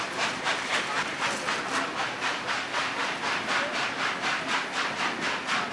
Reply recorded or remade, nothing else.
recorded